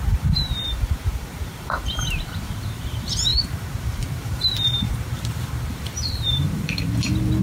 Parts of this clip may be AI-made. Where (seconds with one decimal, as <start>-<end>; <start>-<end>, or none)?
0.0-7.4